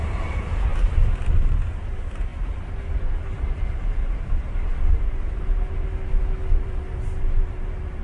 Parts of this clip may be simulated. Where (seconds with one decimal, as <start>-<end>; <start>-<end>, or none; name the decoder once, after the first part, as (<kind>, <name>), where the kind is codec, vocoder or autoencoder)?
0.0-2.3 (vocoder, BigVGAN v2); 3.2-4.7; 6.6-8.0